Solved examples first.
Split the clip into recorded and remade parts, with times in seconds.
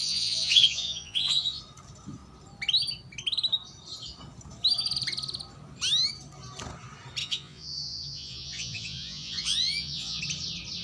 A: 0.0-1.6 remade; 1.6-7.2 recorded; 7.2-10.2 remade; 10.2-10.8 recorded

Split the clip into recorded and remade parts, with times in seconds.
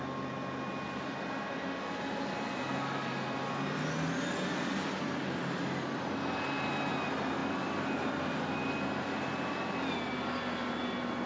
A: 0.0-11.3 recorded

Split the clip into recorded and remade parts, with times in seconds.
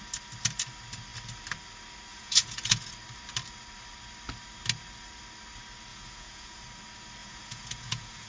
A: 0.0-2.1 recorded; 2.1-2.9 remade; 2.9-5.9 recorded; 5.9-6.6 remade; 6.6-7.2 recorded; 7.2-8.3 remade